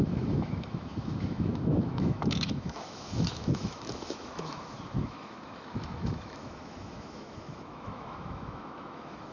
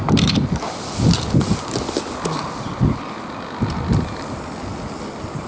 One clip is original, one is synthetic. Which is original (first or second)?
second